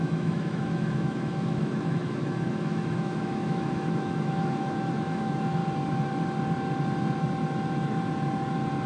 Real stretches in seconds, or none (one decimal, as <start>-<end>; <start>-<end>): 5.6-8.9